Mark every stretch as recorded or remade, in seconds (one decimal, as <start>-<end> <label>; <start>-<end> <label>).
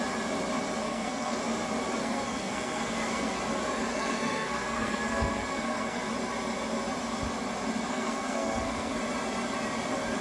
0.0-0.8 recorded; 0.8-1.4 remade; 1.4-2.0 recorded; 2.0-3.4 remade; 3.4-3.9 recorded; 3.9-6.1 remade; 6.1-7.9 recorded; 7.9-9.0 remade; 9.0-10.2 recorded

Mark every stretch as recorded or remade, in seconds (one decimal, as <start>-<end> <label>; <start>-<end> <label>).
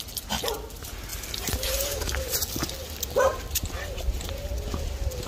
0.0-5.3 recorded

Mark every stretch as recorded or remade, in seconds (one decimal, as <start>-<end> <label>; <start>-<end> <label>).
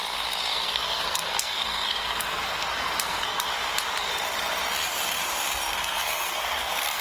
0.0-0.5 recorded; 0.5-3.5 remade; 3.5-5.7 recorded; 5.7-7.0 remade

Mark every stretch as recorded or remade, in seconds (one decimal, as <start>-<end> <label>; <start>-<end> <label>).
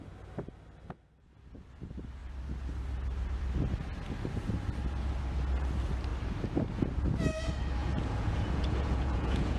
0.0-7.8 recorded; 7.8-9.6 remade